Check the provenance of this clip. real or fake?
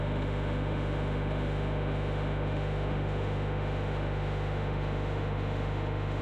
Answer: fake